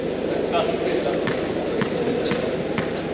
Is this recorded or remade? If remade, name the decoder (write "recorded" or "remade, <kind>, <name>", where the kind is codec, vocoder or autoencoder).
recorded